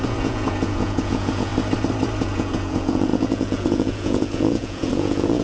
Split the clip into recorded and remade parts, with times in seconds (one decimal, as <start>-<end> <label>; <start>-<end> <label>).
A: 0.0-1.5 remade; 1.5-2.2 recorded; 2.2-5.4 remade